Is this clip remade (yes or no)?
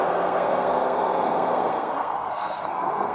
yes